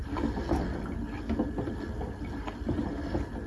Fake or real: real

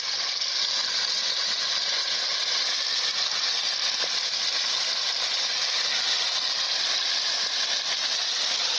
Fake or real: real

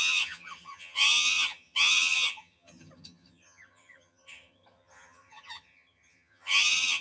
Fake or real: fake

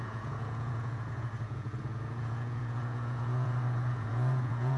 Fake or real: fake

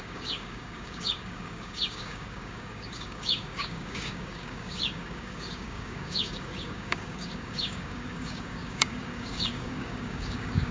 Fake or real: fake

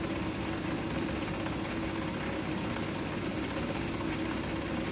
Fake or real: real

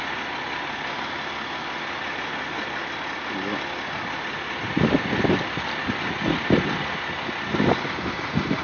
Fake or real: real